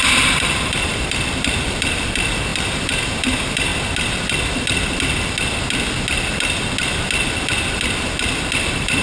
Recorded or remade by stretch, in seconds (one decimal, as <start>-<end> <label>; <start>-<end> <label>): 0.0-3.7 remade; 3.7-8.6 recorded; 8.6-9.0 remade